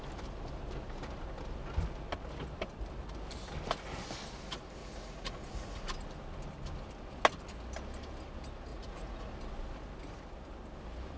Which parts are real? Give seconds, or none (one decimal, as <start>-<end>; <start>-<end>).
0.0-4.8; 5.8-8.7; 9.3-11.2